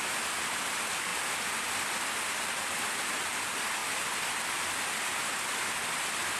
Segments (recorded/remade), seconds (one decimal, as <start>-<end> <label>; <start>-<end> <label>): 0.0-6.4 recorded

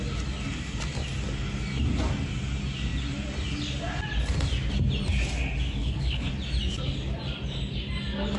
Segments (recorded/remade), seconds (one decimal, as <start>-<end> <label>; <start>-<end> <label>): 0.0-5.8 recorded; 5.8-6.3 remade; 6.3-8.4 recorded

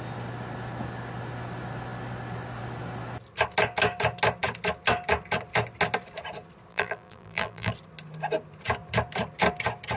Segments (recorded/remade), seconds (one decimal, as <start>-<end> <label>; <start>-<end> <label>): 0.0-6.7 recorded; 6.7-7.7 remade; 7.7-10.0 recorded

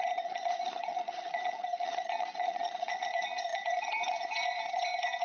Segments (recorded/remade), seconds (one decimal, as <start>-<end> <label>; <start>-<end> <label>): 0.0-5.2 remade

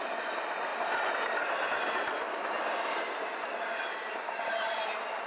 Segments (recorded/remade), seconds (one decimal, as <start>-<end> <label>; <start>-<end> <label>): 0.0-5.3 recorded

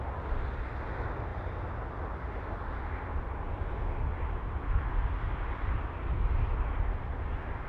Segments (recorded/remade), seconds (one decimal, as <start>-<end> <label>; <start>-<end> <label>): 0.0-7.7 recorded

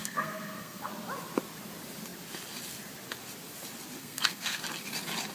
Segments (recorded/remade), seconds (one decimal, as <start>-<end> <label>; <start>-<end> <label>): 0.0-0.9 remade; 0.9-4.0 recorded; 4.0-4.6 remade; 4.6-5.3 recorded

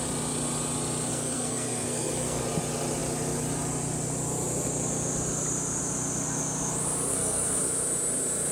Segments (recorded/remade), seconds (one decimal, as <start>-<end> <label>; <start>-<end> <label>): 0.0-1.1 recorded; 1.1-2.4 remade; 2.4-7.1 recorded; 7.1-7.6 remade; 7.6-8.5 recorded